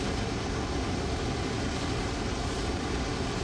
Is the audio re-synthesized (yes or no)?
no